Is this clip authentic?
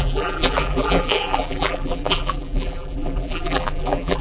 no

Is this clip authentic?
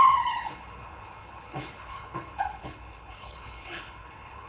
no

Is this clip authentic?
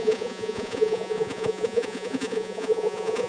no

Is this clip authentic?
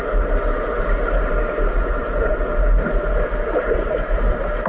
yes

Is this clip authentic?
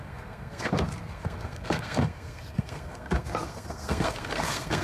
no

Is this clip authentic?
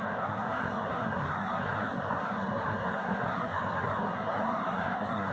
no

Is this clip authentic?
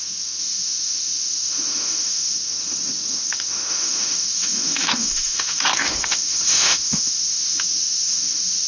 no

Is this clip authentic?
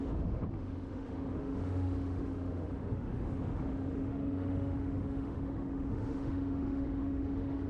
no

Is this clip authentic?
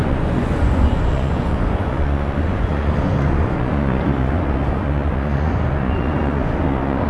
no